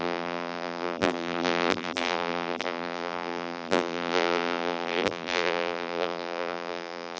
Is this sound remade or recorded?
remade